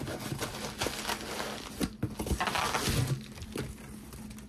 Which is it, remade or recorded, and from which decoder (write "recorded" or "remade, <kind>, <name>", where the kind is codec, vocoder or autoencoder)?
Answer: recorded